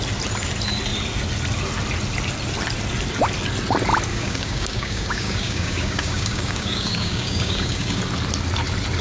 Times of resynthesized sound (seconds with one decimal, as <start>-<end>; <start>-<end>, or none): 4.1-8.0